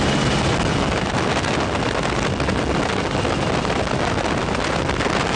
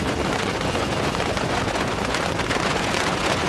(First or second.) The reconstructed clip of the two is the second